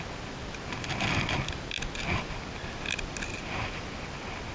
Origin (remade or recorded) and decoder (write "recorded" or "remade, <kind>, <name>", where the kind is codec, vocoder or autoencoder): recorded